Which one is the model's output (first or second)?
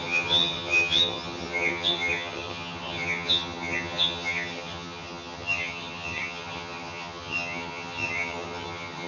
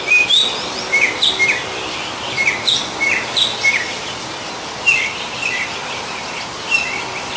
first